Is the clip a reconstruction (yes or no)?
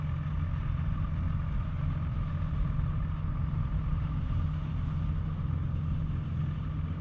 no